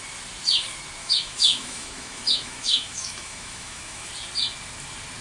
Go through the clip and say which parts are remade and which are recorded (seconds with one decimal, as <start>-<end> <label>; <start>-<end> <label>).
0.0-1.0 recorded; 1.0-4.1 remade; 4.1-5.2 recorded